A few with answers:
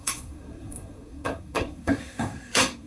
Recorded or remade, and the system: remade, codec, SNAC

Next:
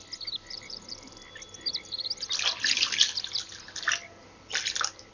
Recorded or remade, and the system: recorded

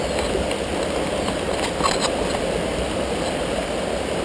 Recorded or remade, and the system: recorded